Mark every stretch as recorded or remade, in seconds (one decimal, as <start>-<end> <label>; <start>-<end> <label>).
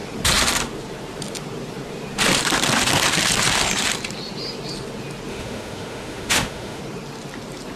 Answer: 0.0-5.3 recorded; 5.3-6.8 remade; 6.8-7.8 recorded